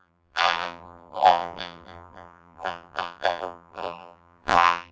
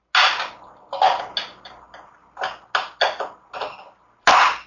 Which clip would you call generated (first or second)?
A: first